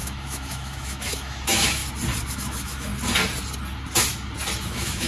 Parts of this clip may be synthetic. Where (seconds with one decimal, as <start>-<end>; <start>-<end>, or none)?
0.0-1.8; 2.3-2.9; 4.6-5.1